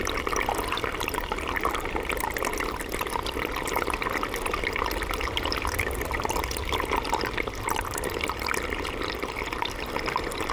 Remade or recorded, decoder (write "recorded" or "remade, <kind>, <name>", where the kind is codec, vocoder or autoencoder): recorded